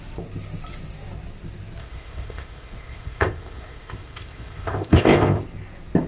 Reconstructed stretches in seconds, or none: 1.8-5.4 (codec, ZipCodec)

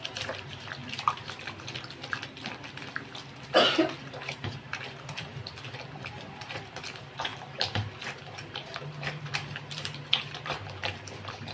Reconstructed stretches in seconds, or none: 0.0-0.8 (vocoder, BigVGAN v2); 4.0-5.4; 6.4-11.5

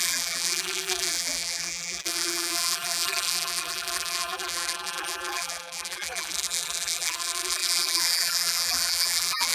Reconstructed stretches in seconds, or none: 0.0-9.5 (vocoder, BigVGAN v2)

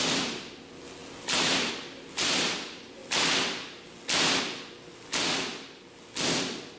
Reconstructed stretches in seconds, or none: none

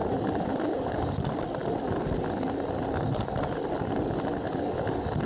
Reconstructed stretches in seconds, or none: 0.0-0.9 (vocoder, BigVGAN v2)

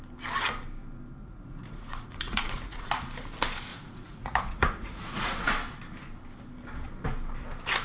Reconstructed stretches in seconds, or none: 1.2-2.9 (vocoder, Vocos); 3.7-5.5